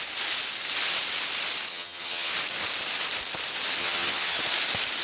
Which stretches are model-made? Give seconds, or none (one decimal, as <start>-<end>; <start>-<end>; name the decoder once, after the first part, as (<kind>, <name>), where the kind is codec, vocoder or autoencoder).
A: 1.7-2.3 (vocoder, HiFi-GAN); 3.8-4.4